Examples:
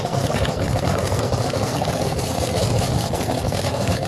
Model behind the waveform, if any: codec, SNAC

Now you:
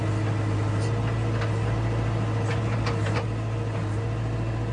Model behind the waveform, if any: none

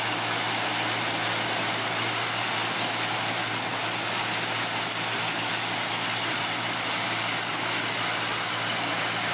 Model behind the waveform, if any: none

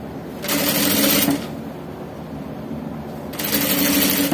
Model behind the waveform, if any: none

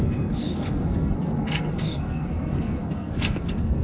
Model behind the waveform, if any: codec, SNAC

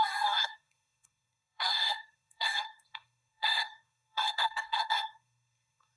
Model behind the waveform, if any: codec, SNAC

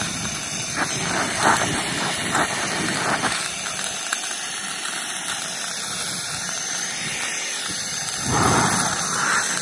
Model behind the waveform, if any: none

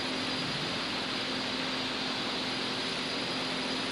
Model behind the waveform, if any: none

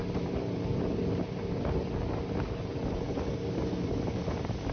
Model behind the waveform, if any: none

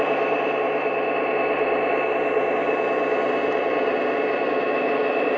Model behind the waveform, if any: none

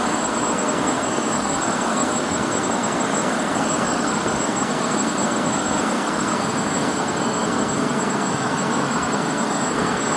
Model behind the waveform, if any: codec, SNAC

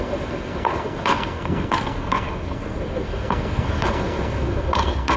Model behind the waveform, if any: codec, SNAC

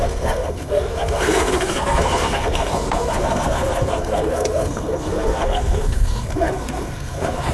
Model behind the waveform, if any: codec, SNAC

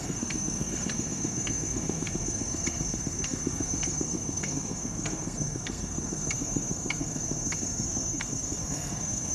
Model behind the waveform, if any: codec, SNAC